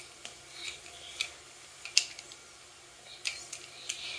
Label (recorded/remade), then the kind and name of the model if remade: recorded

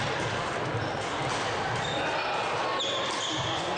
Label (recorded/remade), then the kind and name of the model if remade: recorded